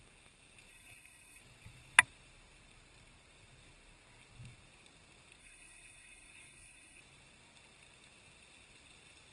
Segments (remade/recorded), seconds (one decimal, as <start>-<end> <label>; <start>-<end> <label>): 0.0-0.7 recorded; 0.7-1.4 remade; 1.4-5.4 recorded; 5.4-7.0 remade; 7.0-9.3 recorded